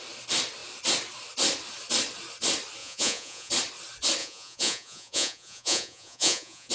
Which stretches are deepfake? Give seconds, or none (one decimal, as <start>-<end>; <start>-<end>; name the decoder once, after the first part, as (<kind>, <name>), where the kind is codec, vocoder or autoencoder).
2.8-3.5 (vocoder, Vocos); 4.2-6.7